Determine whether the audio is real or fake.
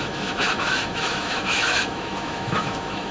fake